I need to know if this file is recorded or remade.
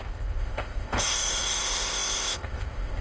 remade